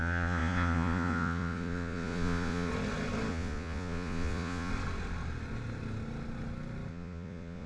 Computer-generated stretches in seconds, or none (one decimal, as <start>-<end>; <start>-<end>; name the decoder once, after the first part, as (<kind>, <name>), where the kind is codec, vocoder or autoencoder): 0.0-2.7 (vocoder, Vocos); 3.3-4.7; 6.9-7.7